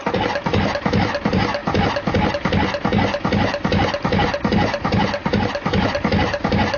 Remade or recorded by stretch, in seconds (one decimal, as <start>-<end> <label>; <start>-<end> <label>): 0.0-6.8 recorded

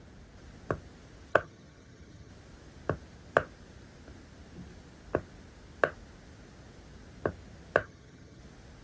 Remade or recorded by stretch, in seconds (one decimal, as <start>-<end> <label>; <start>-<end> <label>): 0.0-1.3 recorded; 1.3-2.3 remade; 2.3-7.8 recorded; 7.8-8.4 remade; 8.4-8.8 recorded

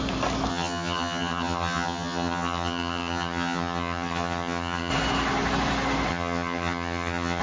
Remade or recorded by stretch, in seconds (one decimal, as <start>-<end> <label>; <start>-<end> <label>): 0.0-0.5 recorded; 0.5-4.9 remade; 4.9-6.1 recorded; 6.1-7.4 remade

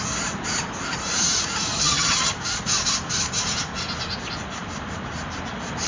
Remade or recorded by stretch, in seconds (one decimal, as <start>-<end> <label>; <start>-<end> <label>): 0.0-1.7 recorded; 1.7-2.3 remade; 2.3-5.9 recorded

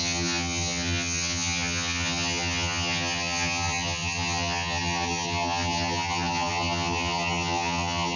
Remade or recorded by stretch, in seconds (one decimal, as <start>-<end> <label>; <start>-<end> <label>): 0.0-8.2 remade

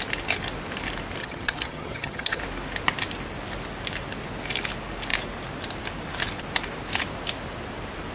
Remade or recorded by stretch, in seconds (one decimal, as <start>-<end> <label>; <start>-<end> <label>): 0.0-1.2 recorded; 1.2-2.4 remade; 2.4-8.1 recorded

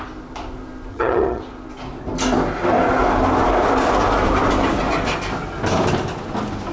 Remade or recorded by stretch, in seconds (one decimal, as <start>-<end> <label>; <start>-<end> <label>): 0.0-0.9 recorded; 0.9-1.4 remade; 1.4-6.7 recorded